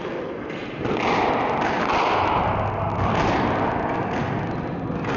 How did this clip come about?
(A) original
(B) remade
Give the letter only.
A